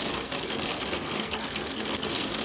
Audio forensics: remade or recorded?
remade